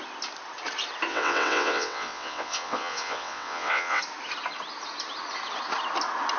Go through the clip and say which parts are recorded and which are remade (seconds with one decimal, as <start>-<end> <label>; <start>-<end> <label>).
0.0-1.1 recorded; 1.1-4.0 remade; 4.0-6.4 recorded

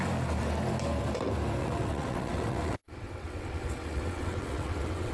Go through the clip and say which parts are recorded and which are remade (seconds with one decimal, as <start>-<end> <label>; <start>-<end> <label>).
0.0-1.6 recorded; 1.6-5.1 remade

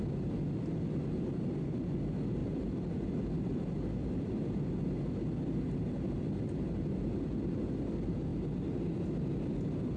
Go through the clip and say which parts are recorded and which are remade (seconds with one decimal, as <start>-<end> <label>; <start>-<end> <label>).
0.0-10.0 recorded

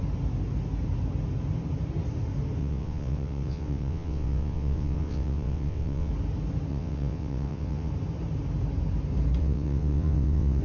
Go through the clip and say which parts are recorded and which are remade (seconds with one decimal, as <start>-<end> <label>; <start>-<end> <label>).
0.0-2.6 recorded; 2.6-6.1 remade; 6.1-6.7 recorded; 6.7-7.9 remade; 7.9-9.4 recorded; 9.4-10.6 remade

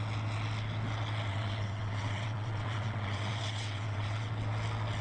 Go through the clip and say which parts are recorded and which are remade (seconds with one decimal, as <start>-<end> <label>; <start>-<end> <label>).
0.0-1.3 recorded; 1.3-4.3 remade; 4.3-5.0 recorded

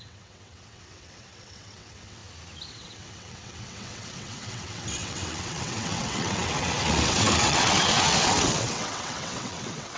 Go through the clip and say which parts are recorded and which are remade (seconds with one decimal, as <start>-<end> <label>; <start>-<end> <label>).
0.0-2.2 remade; 2.2-2.7 recorded; 2.7-10.0 remade

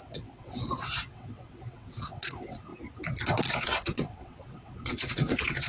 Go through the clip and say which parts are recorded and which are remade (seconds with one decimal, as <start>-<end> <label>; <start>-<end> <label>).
0.0-2.7 remade; 2.7-3.5 recorded; 3.5-5.7 remade